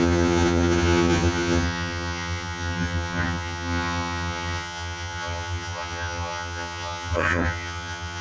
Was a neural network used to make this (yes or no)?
yes